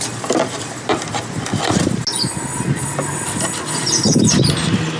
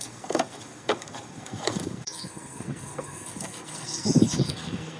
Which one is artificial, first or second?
second